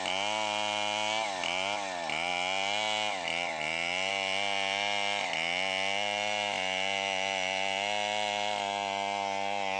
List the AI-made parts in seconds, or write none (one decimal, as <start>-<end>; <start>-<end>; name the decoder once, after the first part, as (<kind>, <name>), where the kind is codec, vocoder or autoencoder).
none